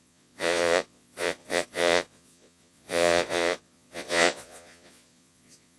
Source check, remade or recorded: remade